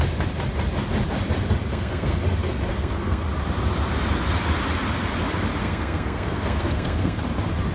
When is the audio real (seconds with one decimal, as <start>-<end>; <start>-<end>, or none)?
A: 0.0-1.7; 2.2-2.7; 3.2-5.6; 7.2-7.7